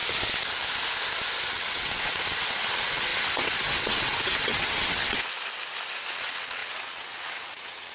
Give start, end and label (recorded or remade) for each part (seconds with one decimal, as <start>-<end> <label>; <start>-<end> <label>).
0.0-1.5 recorded; 1.5-5.3 remade; 5.3-6.1 recorded; 6.1-7.9 remade